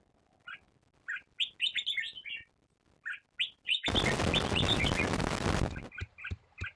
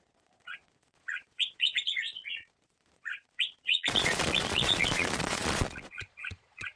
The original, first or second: first